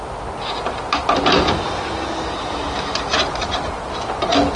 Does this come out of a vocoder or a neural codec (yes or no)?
no